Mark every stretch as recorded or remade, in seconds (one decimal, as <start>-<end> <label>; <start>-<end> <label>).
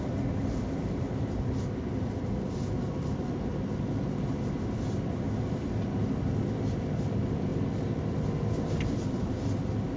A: 0.0-10.0 recorded